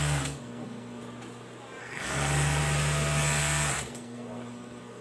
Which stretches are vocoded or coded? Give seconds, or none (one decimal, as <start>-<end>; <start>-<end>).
0.0-1.0; 1.8-2.6; 3.4-5.0